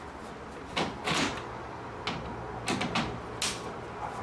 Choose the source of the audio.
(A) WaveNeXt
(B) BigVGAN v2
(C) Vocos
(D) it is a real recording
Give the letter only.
D